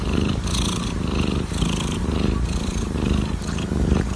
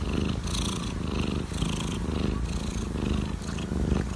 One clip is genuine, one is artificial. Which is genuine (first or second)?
second